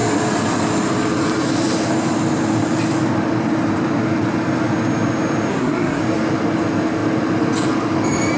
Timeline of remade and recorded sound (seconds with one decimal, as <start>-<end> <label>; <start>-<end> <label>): 0.0-5.5 recorded; 5.5-6.0 remade; 6.0-8.4 recorded